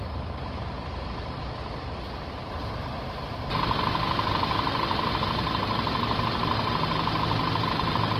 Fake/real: real